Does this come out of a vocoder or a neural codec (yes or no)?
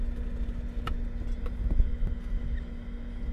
no